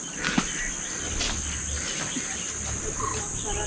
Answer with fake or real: real